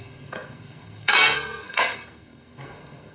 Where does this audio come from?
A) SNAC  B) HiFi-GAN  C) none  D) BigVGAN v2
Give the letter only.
A